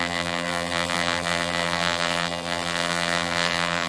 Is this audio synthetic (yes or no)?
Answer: yes